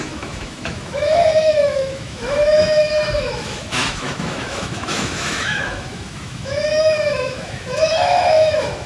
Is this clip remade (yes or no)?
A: yes